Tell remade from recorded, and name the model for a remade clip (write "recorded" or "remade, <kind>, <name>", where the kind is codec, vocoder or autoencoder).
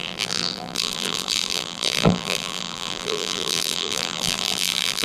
remade, vocoder, BigVGAN v2